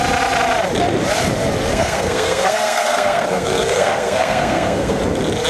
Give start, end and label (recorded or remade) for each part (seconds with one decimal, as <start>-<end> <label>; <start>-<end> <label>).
0.0-1.7 recorded; 1.7-5.0 remade; 5.0-5.5 recorded